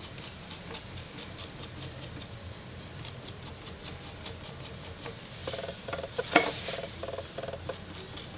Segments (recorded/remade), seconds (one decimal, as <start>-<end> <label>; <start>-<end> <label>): 0.0-5.4 remade; 5.4-8.4 recorded